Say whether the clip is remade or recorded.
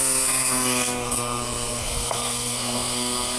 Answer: remade